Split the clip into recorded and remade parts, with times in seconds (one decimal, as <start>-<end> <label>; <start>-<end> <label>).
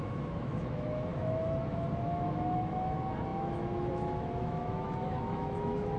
0.0-6.0 remade